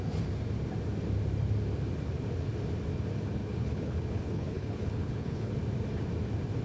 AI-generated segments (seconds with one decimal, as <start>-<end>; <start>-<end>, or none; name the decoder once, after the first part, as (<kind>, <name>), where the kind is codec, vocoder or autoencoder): 3.4-5.5 (codec, HILCodec)